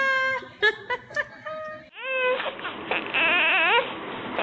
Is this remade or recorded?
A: recorded